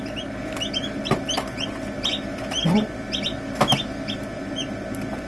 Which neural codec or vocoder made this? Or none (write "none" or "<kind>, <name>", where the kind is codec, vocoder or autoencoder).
none